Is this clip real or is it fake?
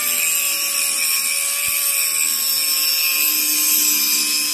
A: real